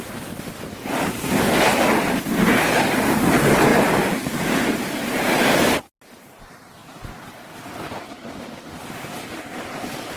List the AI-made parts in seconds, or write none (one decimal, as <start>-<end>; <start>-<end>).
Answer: 3.7-5.9